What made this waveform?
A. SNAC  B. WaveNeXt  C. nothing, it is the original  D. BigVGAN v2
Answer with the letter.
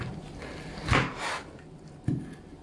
C